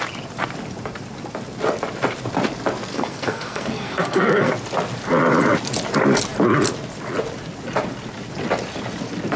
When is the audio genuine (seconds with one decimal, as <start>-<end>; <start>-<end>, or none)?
0.0-2.9; 4.5-9.4